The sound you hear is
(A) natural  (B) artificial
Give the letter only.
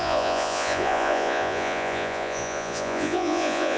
B